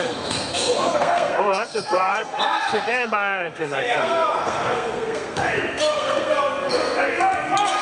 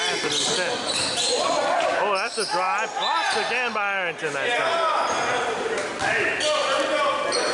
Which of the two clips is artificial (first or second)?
first